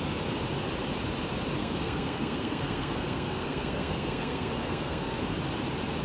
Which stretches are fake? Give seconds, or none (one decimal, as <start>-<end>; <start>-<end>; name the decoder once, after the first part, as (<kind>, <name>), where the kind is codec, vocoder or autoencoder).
1.6-5.2 (codec, SNAC)